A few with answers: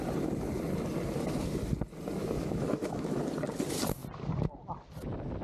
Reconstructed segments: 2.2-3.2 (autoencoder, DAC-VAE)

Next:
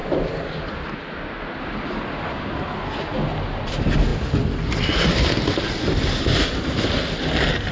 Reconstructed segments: none